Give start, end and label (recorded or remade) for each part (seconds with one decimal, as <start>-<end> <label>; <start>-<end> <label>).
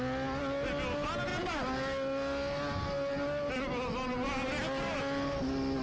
0.0-5.8 recorded